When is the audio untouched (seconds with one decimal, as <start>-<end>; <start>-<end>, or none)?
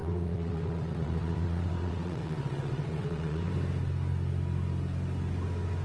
3.5-5.8